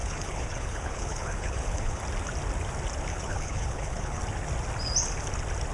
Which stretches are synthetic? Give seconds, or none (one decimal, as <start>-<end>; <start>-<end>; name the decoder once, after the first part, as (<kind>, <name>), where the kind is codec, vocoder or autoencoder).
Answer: 0.0-2.0 (codec, HILCodec); 3.1-4.2